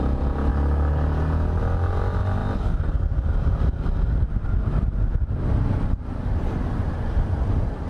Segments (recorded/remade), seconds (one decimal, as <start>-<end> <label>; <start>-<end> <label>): 0.0-7.9 recorded